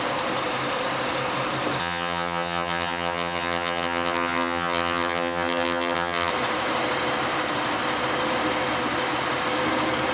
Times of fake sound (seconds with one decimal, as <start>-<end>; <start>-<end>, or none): 1.8-6.3